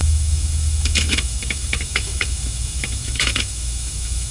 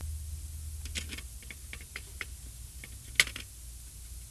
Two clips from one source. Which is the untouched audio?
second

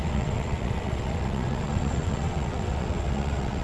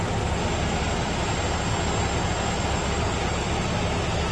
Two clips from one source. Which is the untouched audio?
second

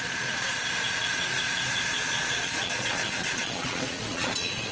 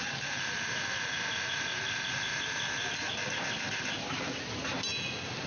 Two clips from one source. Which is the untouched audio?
second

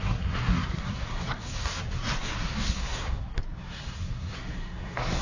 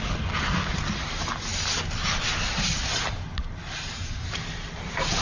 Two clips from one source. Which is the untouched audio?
second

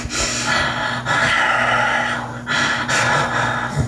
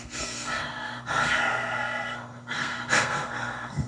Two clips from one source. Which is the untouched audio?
first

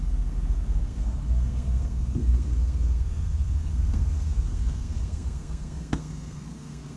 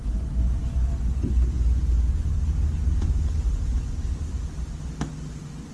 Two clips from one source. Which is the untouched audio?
second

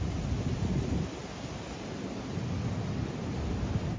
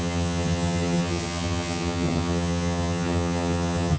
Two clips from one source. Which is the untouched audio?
first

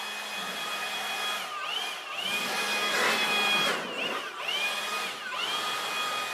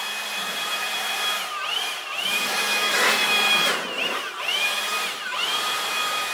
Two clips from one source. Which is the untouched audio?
first